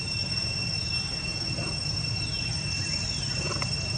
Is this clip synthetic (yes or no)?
no